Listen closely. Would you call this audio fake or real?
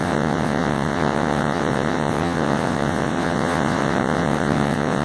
fake